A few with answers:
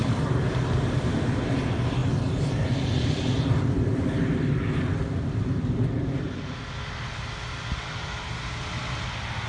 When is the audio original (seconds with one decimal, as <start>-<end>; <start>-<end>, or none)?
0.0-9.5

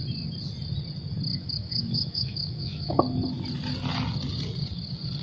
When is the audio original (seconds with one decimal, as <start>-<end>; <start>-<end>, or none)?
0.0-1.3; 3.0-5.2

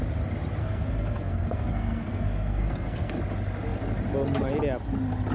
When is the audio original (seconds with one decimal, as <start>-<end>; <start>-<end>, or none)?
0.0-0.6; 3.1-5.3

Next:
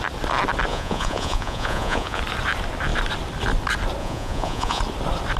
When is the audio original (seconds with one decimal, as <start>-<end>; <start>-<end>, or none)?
0.0-0.7; 2.2-4.0; 4.8-5.4

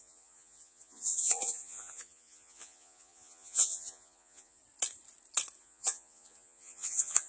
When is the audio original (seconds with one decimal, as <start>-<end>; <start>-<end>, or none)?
4.6-5.6